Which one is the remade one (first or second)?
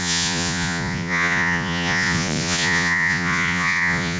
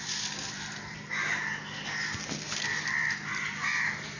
first